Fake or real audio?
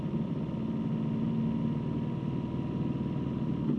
real